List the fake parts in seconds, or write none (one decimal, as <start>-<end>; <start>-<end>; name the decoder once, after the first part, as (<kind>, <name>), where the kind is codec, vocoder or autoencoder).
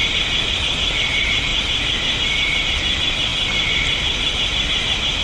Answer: 0.5-1.5 (vocoder, BigVGAN v2); 2.6-3.3; 4.8-5.2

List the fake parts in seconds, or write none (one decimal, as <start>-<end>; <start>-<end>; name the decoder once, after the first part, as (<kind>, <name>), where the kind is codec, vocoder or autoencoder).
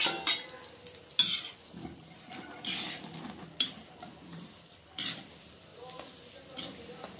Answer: 4.2-5.3 (vocoder, BigVGAN v2)